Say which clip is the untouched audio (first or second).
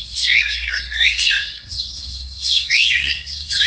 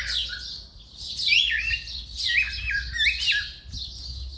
second